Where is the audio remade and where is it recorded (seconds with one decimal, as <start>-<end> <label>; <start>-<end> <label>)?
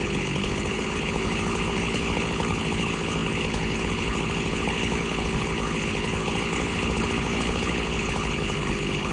0.0-9.1 remade